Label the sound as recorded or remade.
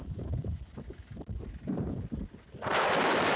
recorded